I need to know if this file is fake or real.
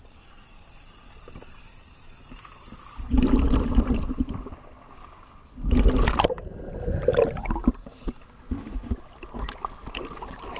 real